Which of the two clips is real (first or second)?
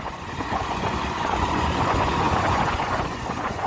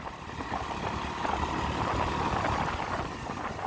second